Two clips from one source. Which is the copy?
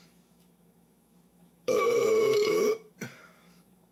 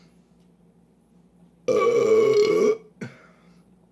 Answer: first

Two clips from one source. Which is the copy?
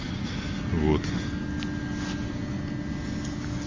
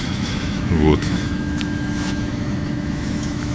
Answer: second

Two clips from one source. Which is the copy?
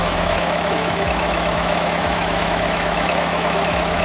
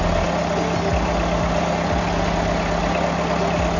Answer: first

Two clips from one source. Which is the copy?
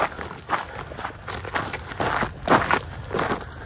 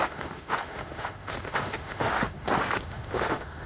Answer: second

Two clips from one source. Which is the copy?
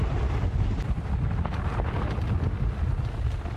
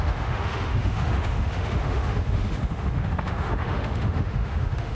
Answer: second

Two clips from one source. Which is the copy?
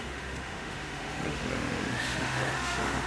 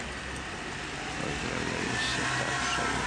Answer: first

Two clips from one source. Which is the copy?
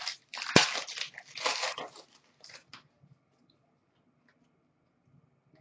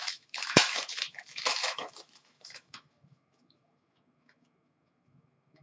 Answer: second